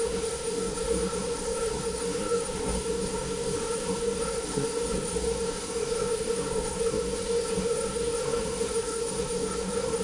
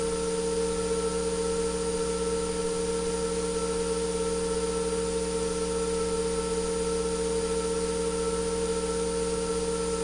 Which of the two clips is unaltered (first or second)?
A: second